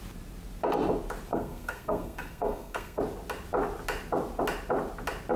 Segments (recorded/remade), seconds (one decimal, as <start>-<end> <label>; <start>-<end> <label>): 0.0-1.3 recorded; 1.3-3.0 remade; 3.0-5.4 recorded